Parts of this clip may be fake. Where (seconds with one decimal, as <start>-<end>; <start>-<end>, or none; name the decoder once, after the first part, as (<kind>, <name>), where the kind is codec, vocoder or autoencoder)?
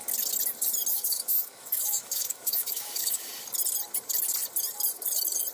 0.9-3.3 (autoencoder, DAC-VAE)